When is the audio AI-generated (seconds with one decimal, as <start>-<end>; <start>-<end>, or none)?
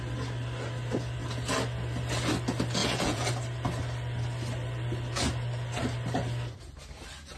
2.8-3.3